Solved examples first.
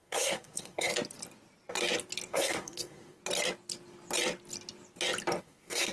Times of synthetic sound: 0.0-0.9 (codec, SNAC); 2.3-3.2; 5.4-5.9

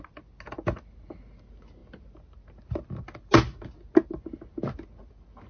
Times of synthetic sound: none

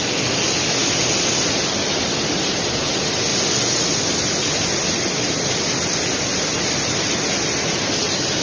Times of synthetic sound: none

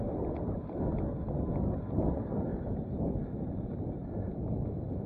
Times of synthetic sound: 2.5-3.1 (vocoder, BigVGAN v2)